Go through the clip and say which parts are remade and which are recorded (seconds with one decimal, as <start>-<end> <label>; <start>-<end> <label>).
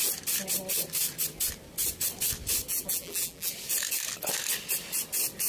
0.0-2.7 recorded; 2.7-3.5 remade; 3.5-5.5 recorded